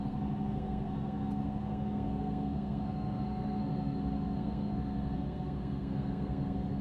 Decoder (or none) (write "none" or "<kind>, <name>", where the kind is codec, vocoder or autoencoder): codec, SNAC